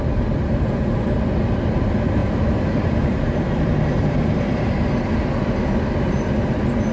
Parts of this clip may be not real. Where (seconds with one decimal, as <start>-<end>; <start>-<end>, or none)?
2.2-4.7